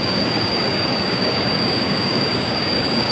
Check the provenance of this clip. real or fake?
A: fake